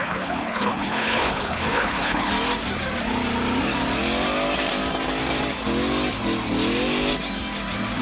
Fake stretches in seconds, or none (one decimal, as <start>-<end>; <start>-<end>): 0.0-2.3